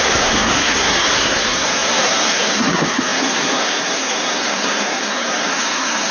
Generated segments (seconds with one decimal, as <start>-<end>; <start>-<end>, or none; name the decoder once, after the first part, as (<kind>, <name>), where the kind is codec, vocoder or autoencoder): 0.0-6.1 (codec, SNAC)